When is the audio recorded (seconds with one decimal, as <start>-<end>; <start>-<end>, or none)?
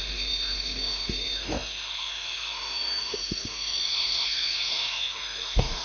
none